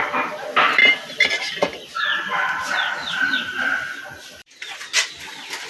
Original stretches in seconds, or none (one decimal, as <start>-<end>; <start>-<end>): 0.0-0.8; 1.4-2.1; 4.8-5.7